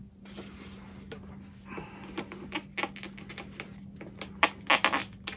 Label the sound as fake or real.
real